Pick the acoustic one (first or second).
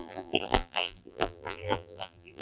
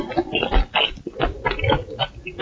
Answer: second